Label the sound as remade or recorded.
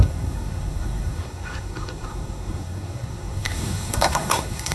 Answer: remade